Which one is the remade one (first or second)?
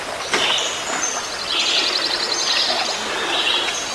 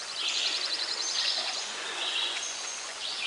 second